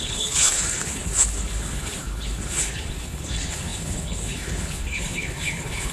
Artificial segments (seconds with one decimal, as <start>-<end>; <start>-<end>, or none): 0.0-5.9